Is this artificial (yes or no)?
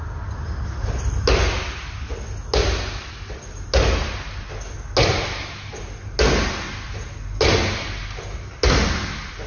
no